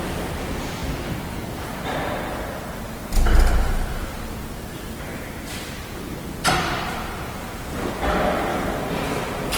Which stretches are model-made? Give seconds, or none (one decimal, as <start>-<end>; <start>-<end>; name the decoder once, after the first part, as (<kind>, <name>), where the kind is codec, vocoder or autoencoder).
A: none